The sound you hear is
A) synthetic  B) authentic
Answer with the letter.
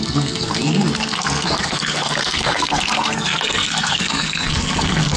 A